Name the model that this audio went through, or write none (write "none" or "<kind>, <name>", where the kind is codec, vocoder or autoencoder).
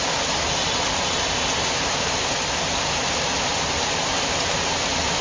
none